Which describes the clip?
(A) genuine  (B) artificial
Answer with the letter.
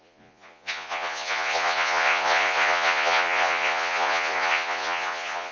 B